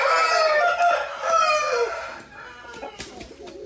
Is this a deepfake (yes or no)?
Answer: no